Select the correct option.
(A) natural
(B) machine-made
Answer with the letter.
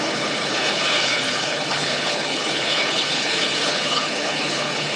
B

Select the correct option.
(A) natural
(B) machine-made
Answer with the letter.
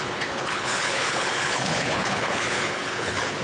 B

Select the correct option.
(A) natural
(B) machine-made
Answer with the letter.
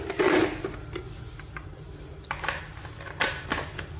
A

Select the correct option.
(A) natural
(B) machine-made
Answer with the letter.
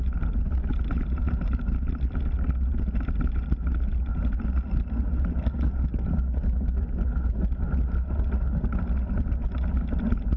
A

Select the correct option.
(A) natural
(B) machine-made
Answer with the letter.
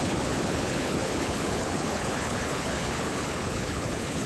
B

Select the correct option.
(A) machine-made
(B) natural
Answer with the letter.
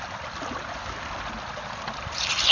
B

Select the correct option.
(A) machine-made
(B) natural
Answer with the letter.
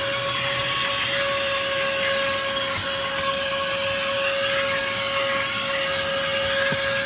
B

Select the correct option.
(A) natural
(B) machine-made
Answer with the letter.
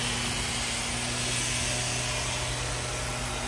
A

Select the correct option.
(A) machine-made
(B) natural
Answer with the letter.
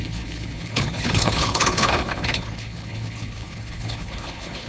A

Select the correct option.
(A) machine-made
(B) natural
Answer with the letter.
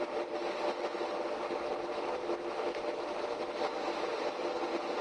B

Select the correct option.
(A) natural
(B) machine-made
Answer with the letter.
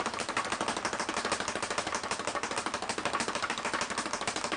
A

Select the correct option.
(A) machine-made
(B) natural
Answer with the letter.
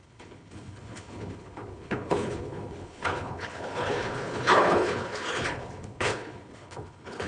A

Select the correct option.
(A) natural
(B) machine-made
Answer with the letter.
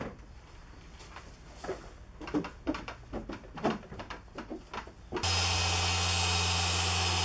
A